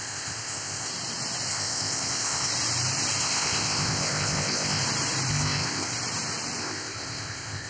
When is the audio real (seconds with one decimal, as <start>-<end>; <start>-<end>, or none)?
0.9-1.5; 2.5-3.2; 4.8-5.3; 5.9-6.6